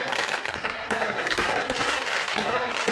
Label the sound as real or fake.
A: fake